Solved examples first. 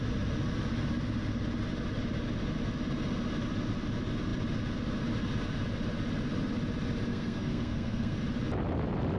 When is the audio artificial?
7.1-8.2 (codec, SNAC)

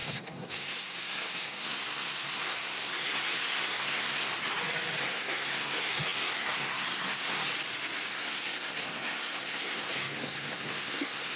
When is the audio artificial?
0.0-4.3 (codec, SNAC); 5.0-7.4; 8.1-11.4

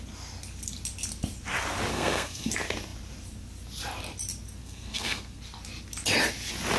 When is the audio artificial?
1.9-2.5 (codec, SNAC); 4.6-5.4